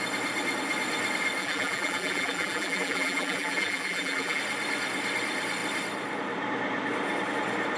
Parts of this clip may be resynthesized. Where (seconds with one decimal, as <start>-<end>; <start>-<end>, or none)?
1.4-4.4